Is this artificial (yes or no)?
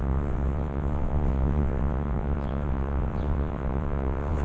yes